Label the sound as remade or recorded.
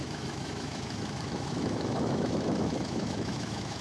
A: remade